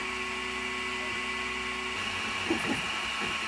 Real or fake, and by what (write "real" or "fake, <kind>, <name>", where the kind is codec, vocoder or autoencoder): real